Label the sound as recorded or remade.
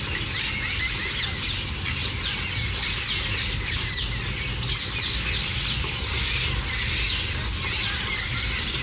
recorded